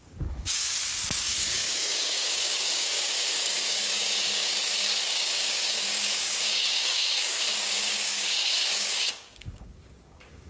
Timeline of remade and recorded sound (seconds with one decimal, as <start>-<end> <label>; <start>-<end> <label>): 0.0-10.5 remade